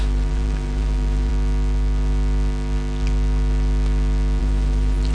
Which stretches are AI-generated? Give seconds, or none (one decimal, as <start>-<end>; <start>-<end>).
0.0-1.3; 4.4-5.1